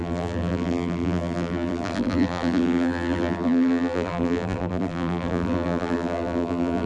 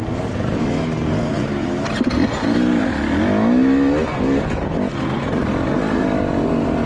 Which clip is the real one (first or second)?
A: second